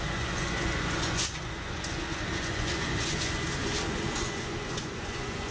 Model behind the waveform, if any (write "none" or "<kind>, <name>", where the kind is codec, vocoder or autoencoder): vocoder, Vocos